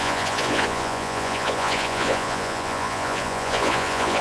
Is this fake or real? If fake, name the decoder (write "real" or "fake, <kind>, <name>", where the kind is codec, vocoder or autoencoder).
fake, vocoder, Vocos